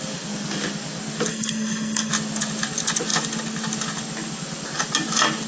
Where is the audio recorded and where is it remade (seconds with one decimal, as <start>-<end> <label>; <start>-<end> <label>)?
0.0-1.3 recorded; 1.3-2.1 remade; 2.1-5.5 recorded